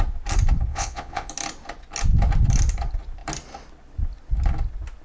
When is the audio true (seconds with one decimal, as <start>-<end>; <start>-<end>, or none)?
0.0-0.7; 1.3-5.0